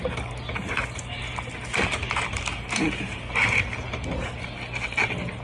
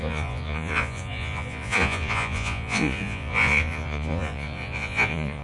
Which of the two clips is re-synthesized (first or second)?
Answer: second